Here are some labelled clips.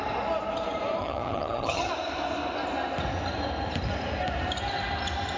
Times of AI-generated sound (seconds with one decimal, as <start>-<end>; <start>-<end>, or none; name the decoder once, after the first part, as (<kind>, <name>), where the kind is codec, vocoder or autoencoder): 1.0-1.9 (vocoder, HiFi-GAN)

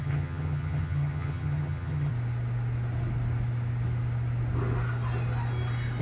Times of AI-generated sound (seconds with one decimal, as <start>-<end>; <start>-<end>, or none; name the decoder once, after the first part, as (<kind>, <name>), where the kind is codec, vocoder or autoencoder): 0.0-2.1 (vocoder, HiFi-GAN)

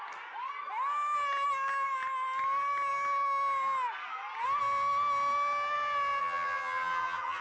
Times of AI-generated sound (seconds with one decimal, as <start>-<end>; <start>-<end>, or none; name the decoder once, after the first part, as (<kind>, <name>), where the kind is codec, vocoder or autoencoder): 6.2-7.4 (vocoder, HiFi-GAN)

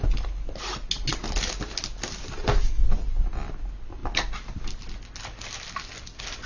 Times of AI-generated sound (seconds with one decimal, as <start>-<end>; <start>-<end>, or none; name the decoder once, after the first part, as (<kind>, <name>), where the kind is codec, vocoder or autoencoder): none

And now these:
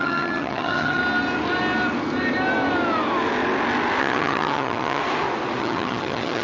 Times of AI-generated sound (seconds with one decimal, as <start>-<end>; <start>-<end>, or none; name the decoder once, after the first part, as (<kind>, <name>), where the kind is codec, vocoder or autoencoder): 0.0-1.0 (vocoder, HiFi-GAN); 4.0-5.0; 5.6-6.4